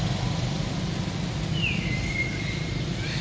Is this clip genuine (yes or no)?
yes